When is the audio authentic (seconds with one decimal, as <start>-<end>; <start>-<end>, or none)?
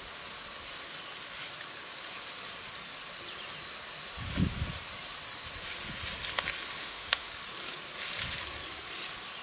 0.0-6.8; 7.3-9.4